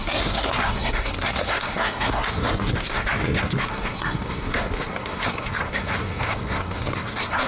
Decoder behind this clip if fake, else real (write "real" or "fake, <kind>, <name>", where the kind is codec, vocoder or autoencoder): fake, codec, SNAC